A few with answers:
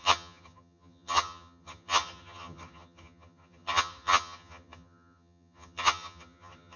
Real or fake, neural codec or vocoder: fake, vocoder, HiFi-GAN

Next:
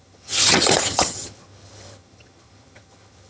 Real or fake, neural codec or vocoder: fake, vocoder, HiFi-GAN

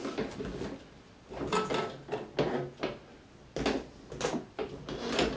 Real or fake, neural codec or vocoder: real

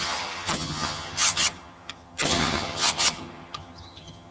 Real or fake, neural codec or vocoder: fake, vocoder, HiFi-GAN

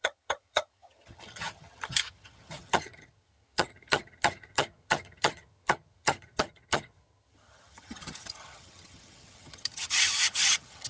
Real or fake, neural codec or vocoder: fake, vocoder, HiFi-GAN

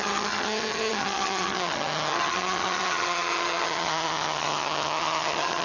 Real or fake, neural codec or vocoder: fake, vocoder, HiFi-GAN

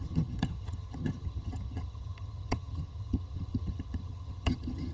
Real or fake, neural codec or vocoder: fake, vocoder, HiFi-GAN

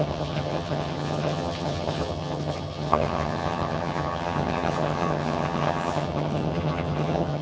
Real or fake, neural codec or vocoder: fake, vocoder, HiFi-GAN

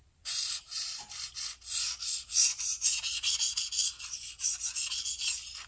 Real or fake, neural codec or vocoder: real